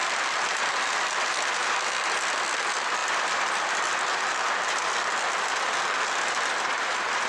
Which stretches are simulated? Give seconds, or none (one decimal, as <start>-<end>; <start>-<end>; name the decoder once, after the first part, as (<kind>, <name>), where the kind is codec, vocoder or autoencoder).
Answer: none